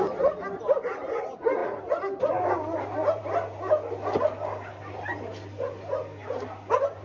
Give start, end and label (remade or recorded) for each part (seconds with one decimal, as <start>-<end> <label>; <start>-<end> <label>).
0.0-1.6 recorded; 1.6-3.3 remade; 3.3-7.0 recorded